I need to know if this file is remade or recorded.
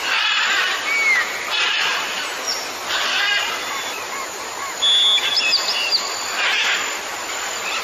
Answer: recorded